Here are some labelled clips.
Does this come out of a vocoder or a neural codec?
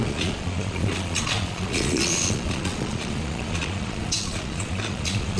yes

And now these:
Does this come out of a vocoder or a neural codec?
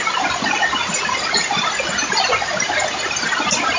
no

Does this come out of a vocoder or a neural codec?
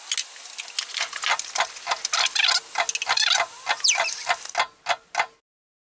no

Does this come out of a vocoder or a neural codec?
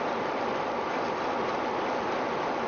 no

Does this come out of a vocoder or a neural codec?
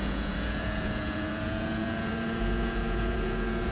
yes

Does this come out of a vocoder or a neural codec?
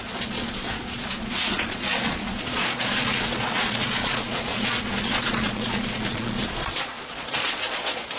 yes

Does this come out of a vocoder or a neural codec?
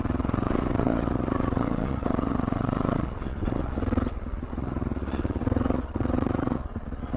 yes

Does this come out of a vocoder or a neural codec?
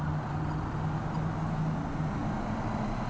no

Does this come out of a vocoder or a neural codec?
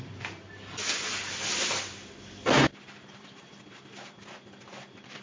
no